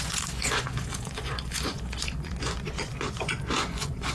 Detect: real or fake fake